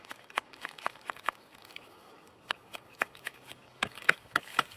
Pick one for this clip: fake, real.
fake